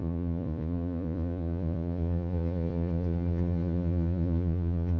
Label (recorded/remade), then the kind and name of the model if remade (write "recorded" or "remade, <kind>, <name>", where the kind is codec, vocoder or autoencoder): remade, vocoder, Vocos